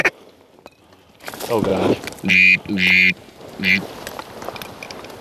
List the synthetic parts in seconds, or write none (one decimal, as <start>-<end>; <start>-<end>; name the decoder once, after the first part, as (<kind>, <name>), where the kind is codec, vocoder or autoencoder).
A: none